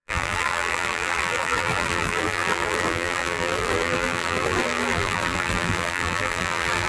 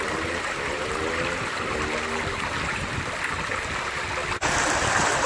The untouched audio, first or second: second